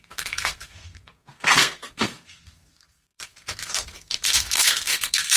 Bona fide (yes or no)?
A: no